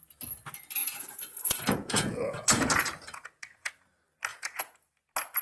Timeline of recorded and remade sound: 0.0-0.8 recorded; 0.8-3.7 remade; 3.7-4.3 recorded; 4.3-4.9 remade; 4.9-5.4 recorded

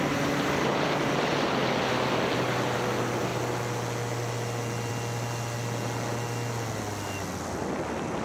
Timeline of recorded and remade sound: 0.0-8.2 recorded

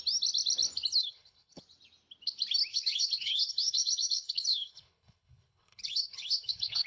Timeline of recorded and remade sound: 0.0-1.0 recorded; 1.0-1.6 remade; 1.6-2.7 recorded; 2.7-6.9 remade

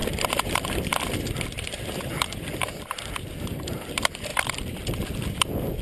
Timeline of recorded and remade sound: 0.0-5.8 remade